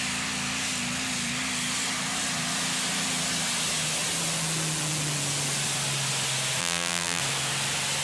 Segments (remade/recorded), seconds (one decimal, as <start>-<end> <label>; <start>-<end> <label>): 0.0-6.6 recorded; 6.6-7.2 remade; 7.2-8.0 recorded